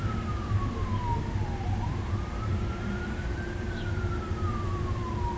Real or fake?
fake